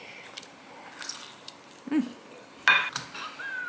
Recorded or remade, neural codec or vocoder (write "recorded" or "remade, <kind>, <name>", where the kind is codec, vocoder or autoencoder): recorded